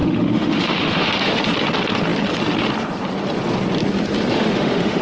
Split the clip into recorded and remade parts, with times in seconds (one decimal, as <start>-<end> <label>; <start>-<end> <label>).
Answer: 0.0-1.4 remade; 1.4-4.3 recorded; 4.3-5.0 remade